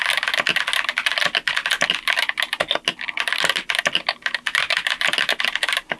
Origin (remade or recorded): recorded